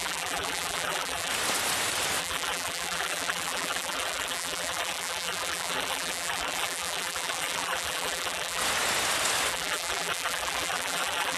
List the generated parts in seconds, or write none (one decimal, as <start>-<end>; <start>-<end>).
0.0-1.3; 2.2-8.6; 9.5-11.4